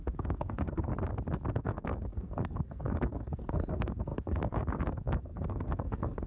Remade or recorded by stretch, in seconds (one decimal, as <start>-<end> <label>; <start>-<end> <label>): 0.0-0.9 remade; 0.9-1.5 recorded; 1.5-6.3 remade